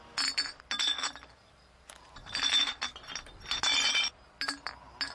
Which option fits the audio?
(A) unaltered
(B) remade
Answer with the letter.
A